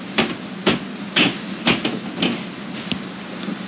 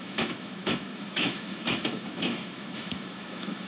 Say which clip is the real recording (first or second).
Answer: first